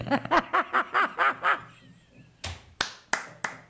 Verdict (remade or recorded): recorded